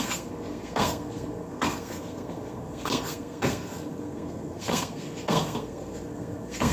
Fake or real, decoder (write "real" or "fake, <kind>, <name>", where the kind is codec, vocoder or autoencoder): fake, codec, SNAC